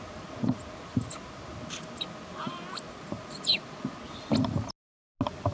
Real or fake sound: real